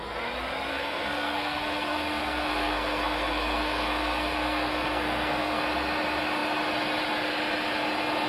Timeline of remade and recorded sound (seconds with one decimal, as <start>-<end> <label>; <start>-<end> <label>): 0.0-0.7 recorded; 0.7-5.6 remade; 5.6-8.3 recorded